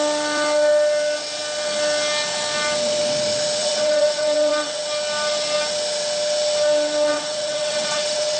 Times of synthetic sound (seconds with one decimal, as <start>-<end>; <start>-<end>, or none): 3.6-4.8; 7.1-8.4